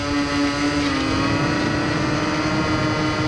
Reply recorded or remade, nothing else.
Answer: recorded